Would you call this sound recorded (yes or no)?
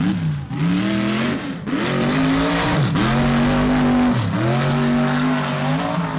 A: yes